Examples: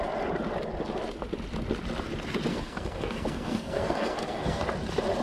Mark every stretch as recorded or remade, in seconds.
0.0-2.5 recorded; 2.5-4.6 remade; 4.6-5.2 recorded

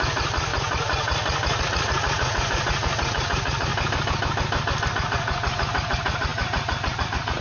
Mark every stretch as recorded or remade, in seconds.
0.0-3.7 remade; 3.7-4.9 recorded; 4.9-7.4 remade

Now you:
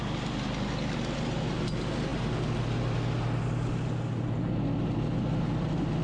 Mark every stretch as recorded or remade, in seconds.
0.0-6.0 recorded

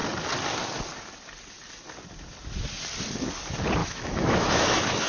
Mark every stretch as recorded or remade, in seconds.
0.0-3.8 recorded; 3.8-5.1 remade